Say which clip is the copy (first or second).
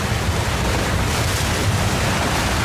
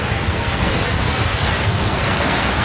second